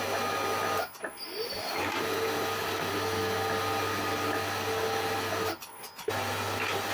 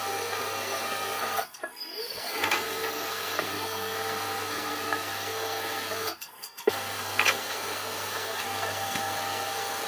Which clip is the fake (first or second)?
second